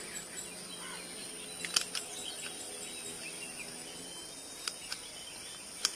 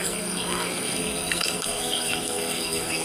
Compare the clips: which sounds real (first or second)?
first